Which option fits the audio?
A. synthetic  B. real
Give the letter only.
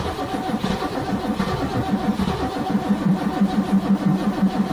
B